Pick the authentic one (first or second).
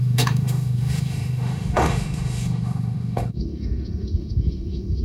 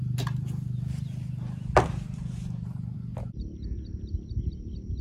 second